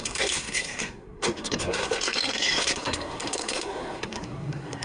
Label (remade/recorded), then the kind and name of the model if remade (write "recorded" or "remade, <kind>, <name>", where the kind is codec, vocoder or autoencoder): remade, codec, SNAC